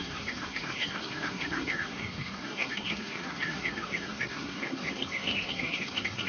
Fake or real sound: fake